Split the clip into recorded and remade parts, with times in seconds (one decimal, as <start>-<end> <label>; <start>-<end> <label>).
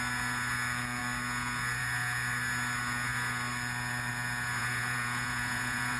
0.0-4.6 recorded; 4.6-6.0 remade